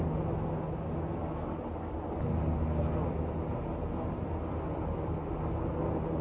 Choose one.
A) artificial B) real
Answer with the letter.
B